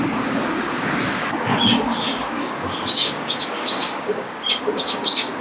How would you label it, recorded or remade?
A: remade